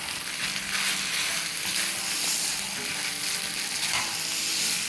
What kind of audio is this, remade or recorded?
recorded